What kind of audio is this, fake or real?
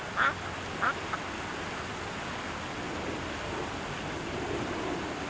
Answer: real